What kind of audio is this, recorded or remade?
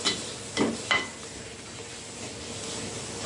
recorded